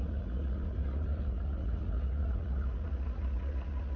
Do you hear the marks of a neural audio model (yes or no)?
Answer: yes